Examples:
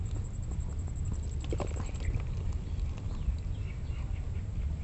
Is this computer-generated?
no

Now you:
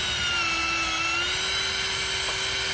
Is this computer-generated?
no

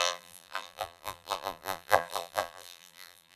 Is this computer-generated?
yes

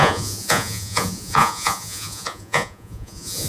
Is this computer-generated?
yes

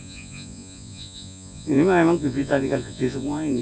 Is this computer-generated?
yes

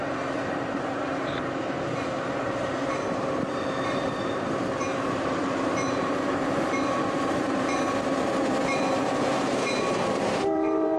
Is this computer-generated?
yes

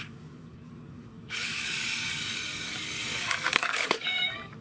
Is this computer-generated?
yes